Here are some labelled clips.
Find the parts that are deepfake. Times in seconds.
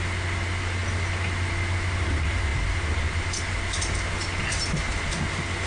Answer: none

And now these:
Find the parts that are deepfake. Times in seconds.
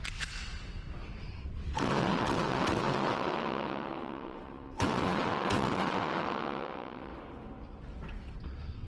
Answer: 0.0-7.1 (vocoder, WaveNeXt); 8.0-8.9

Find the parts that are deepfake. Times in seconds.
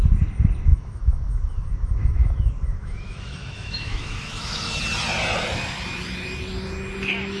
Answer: 0.7-4.8 (autoencoder, DAC-VAE)